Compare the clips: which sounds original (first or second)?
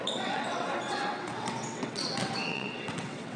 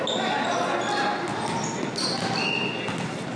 second